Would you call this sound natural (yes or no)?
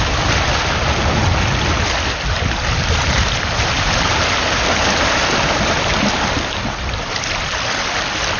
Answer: yes